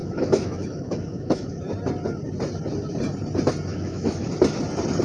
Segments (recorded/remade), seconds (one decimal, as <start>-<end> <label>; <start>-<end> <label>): 0.0-1.6 remade; 1.6-3.7 recorded; 3.7-4.3 remade; 4.3-5.0 recorded